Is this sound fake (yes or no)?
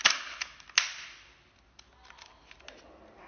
no